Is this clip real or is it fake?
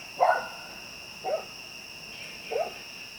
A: real